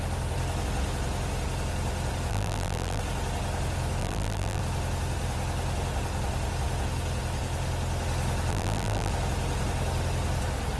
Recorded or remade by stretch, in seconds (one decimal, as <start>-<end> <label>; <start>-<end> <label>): 0.0-2.3 recorded; 2.3-3.0 remade; 3.0-4.0 recorded; 4.0-4.6 remade; 4.6-8.5 recorded; 8.5-9.1 remade; 9.1-10.8 recorded